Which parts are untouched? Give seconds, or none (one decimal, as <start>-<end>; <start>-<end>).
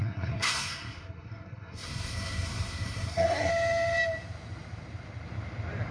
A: 3.5-5.9